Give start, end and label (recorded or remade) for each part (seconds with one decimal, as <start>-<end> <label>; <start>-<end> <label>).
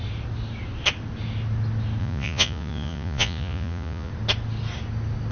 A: 0.0-2.0 recorded; 2.0-4.1 remade; 4.1-5.3 recorded